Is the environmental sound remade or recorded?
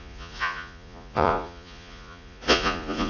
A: remade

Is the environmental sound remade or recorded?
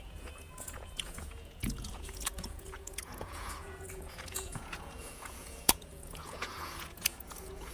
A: remade